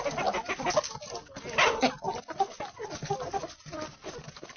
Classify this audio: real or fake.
real